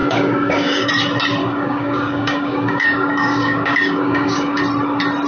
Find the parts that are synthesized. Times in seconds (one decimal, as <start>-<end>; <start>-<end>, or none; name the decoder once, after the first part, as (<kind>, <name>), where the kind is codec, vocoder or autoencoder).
0.0-0.9 (codec, DAC); 1.4-4.6